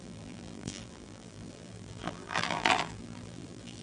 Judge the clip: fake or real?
fake